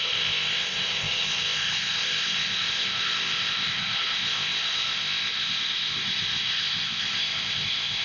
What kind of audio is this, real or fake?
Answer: fake